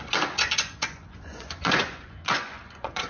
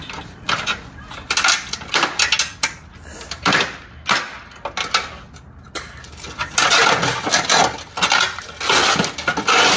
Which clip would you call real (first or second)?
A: second